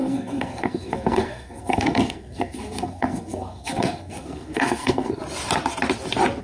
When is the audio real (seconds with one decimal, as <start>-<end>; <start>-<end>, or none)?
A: 5.2-6.4